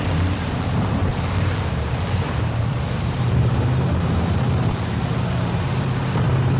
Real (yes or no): no